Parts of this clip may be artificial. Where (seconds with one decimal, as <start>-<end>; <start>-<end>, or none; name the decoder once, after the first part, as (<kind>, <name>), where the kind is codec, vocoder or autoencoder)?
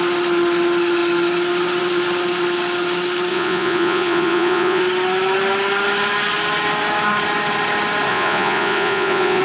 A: 3.3-4.8 (vocoder, Vocos); 8.1-9.4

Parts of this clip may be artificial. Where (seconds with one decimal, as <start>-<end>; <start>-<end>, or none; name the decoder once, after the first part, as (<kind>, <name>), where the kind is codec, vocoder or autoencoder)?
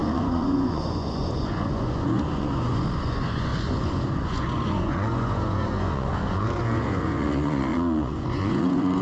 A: 0.0-9.0 (vocoder, Vocos)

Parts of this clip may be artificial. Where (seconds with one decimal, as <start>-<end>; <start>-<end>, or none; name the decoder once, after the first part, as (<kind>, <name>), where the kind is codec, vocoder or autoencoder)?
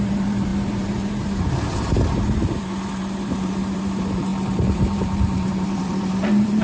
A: 0.0-6.6 (vocoder, BigVGAN v2)